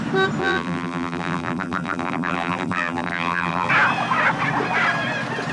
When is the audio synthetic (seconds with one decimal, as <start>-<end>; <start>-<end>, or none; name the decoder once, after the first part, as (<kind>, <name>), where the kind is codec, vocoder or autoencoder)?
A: 0.4-3.7 (vocoder, BigVGAN v2)